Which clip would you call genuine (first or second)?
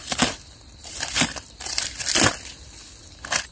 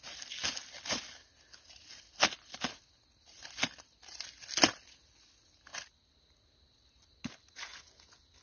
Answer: second